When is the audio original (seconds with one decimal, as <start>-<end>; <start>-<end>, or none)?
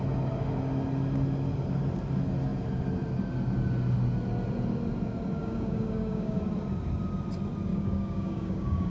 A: 0.0-5.4; 6.4-7.7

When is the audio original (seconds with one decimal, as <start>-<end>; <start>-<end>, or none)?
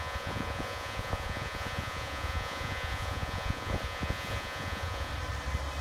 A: 5.1-5.8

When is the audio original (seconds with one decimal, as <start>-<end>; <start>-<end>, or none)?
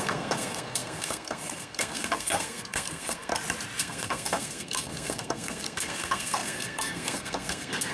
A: 3.3-3.8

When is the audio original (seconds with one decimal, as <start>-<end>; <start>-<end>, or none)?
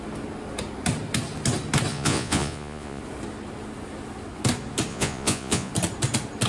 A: 0.0-1.9; 3.0-4.9; 5.7-6.5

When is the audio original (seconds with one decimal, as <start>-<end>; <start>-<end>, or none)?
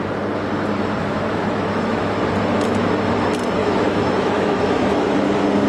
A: 0.0-1.0; 2.2-3.6; 5.1-5.7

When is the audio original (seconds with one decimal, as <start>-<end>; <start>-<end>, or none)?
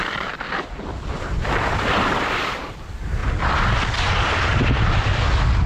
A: 0.0-5.7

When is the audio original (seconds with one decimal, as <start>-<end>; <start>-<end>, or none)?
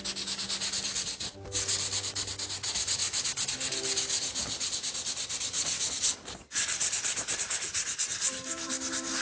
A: 0.0-9.2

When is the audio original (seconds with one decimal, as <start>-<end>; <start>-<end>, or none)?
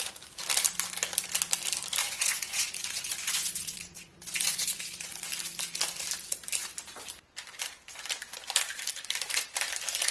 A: 0.0-2.0; 5.3-10.1